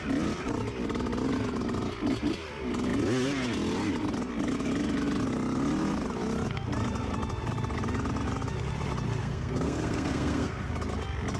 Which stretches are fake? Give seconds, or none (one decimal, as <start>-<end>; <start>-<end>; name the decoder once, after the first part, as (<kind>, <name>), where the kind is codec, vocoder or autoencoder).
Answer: 9.2-10.7 (codec, SNAC)